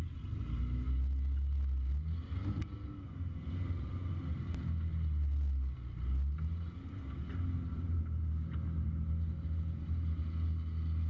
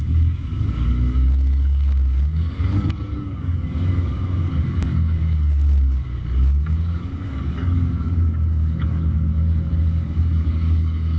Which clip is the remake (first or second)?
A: second